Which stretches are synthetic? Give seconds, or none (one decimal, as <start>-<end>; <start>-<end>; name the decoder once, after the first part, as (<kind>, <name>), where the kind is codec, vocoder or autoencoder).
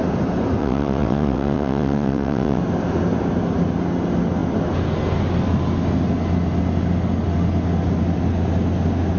0.6-2.6 (vocoder, WaveNeXt)